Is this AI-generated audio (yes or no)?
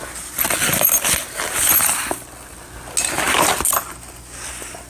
no